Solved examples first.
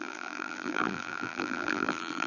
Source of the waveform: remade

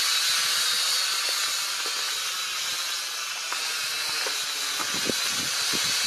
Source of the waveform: recorded